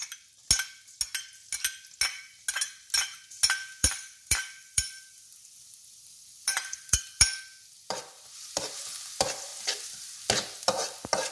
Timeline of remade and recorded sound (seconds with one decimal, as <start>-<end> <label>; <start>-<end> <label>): 0.0-3.8 recorded; 3.8-7.4 remade; 7.4-11.3 recorded